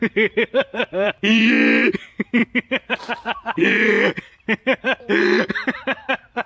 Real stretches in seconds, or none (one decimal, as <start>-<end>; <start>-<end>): 0.0-0.7; 1.5-2.4; 6.1-6.5